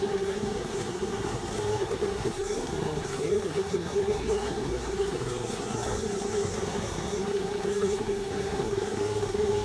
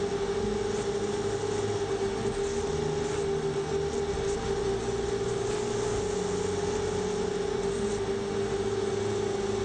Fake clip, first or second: first